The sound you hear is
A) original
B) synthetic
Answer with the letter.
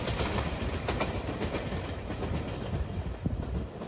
B